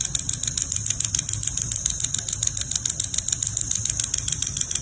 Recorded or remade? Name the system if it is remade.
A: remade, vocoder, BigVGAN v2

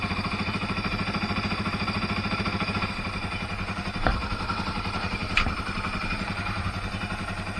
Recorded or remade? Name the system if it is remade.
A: remade, vocoder, BigVGAN v2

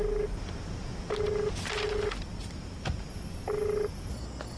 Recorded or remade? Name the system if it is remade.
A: recorded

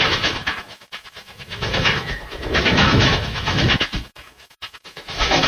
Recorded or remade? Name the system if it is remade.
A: remade, autoencoder, DAC-VAE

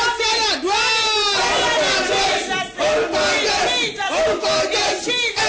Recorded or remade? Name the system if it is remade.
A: recorded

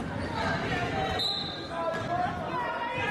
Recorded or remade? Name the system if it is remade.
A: recorded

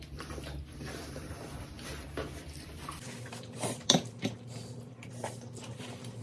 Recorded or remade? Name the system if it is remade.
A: remade, vocoder, BigVGAN v2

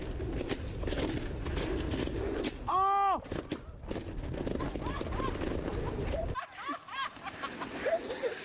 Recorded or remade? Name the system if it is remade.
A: recorded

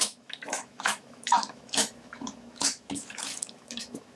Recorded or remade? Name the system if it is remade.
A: remade, autoencoder, DAC-VAE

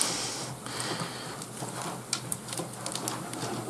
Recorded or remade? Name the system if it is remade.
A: recorded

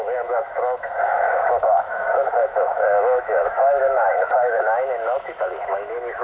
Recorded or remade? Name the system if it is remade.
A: remade, autoencoder, DAC-VAE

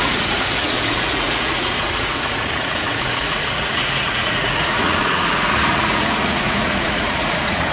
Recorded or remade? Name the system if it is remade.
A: remade, vocoder, Vocos